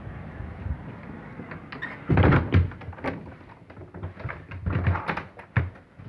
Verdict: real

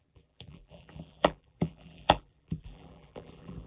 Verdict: fake